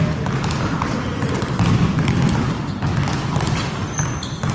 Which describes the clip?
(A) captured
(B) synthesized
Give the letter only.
A